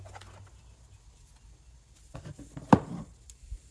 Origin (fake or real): real